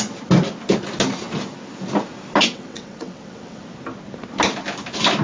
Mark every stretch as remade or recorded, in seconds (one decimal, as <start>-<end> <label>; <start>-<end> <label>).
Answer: 0.0-2.4 recorded; 2.4-3.6 remade; 3.6-5.2 recorded